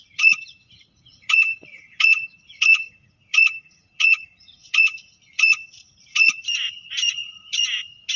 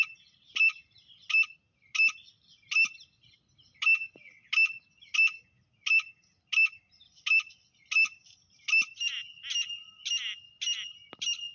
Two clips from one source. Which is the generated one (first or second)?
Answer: first